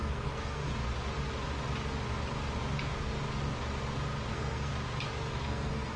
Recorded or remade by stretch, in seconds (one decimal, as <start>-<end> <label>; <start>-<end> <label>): 0.0-0.7 remade; 0.7-4.3 recorded; 4.3-4.7 remade; 4.7-5.3 recorded; 5.3-6.0 remade